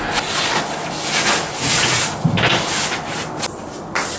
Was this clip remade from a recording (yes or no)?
no